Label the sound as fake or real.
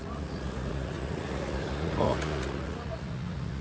fake